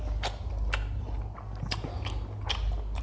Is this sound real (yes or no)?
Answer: yes